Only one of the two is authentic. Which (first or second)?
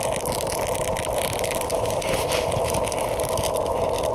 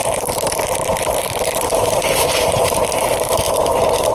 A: first